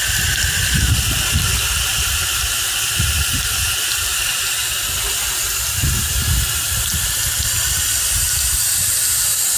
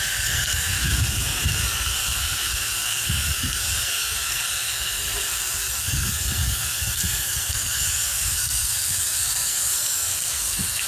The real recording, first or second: first